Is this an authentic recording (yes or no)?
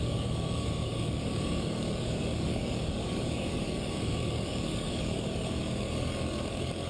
no